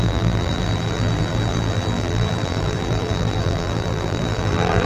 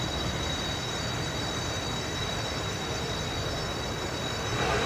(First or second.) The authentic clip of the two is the second